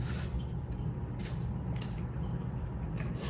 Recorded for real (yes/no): yes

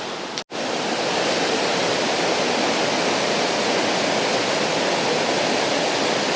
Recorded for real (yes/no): yes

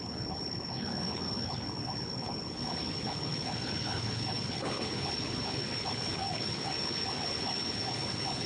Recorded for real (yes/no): no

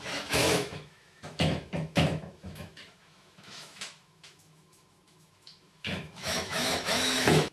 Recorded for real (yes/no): no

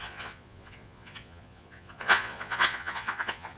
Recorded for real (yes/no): no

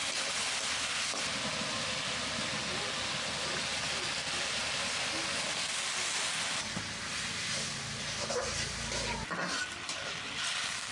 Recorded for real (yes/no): yes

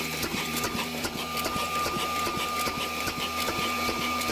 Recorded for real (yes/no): no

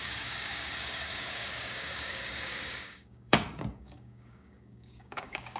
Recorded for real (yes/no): no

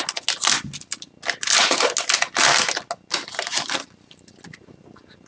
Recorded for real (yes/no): yes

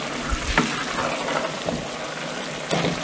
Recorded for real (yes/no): yes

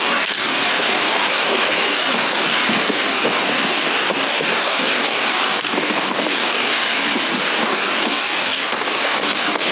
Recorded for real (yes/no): no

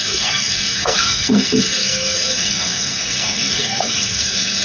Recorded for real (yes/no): no